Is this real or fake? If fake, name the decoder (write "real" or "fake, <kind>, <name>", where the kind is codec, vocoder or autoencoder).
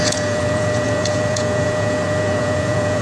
fake, vocoder, Vocos